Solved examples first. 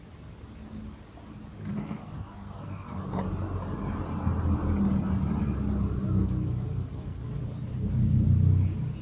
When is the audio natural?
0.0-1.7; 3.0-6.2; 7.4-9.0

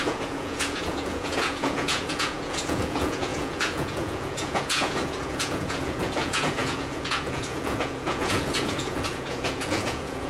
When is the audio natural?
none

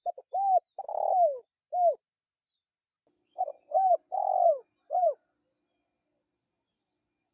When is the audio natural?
0.0-7.3

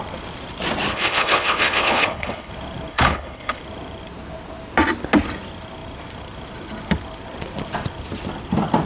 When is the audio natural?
0.0-0.9; 2.5-2.9; 3.6-8.9

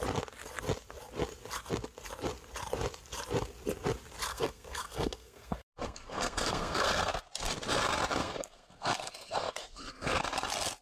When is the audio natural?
0.0-4.3; 7.2-8.2; 10.2-10.8

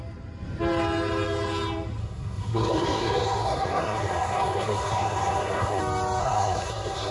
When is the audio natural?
0.0-2.0; 5.8-6.2